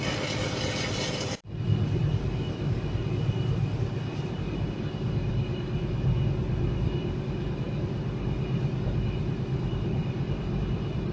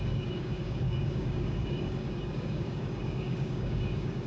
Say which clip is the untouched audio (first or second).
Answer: first